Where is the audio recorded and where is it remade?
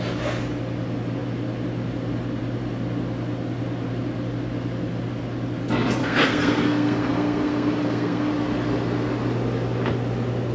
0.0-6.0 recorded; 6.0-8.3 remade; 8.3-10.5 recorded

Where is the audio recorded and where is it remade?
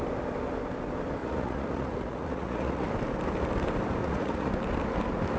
0.0-1.2 recorded; 1.2-2.9 remade; 2.9-4.0 recorded; 4.0-4.5 remade; 4.5-5.4 recorded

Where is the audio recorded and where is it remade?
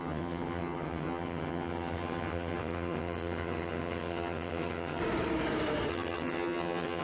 0.0-5.0 remade; 5.0-5.9 recorded; 5.9-7.0 remade